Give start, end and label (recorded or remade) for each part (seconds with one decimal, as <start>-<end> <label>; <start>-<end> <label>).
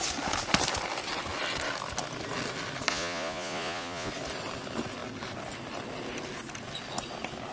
0.0-2.9 recorded; 2.9-4.1 remade; 4.1-7.5 recorded